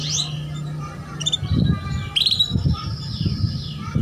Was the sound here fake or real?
fake